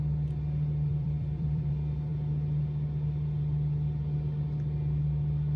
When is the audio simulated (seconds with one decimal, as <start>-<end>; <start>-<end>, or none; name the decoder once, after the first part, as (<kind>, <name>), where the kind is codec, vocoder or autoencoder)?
0.9-1.7 (vocoder, BigVGAN v2)